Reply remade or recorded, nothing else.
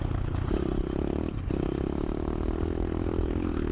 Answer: recorded